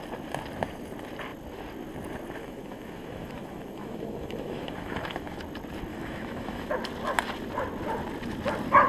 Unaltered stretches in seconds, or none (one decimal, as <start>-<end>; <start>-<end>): 0.0-2.4; 5.4-5.9; 6.7-8.9